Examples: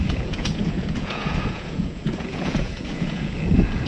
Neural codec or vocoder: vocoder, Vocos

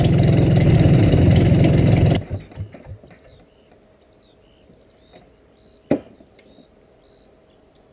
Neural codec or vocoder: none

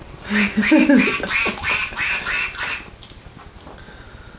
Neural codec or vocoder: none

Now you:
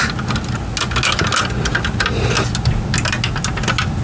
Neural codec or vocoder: none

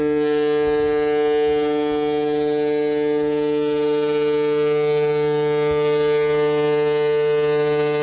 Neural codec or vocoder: none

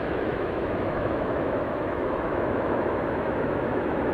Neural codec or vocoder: autoencoder, DAC-VAE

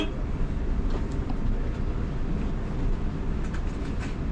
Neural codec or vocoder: none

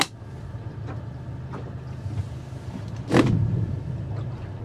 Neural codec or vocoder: none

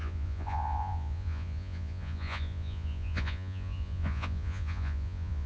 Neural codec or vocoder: vocoder, Vocos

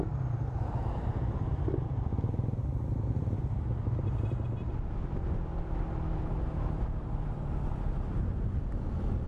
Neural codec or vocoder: none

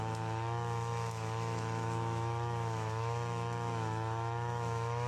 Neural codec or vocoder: autoencoder, DAC-VAE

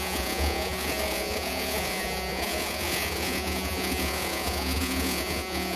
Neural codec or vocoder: vocoder, Vocos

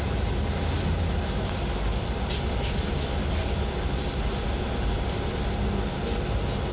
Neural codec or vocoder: none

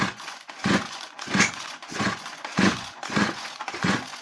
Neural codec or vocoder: vocoder, Vocos